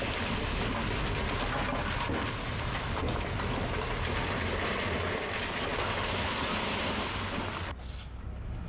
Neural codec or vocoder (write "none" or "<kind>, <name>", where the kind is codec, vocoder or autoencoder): none